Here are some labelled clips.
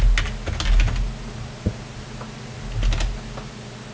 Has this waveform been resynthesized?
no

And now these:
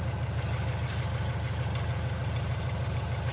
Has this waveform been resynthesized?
no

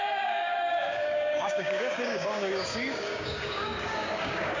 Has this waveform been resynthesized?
yes